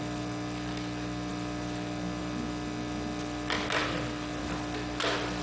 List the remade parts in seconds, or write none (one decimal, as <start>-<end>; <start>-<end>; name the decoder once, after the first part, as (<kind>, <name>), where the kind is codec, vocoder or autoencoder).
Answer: none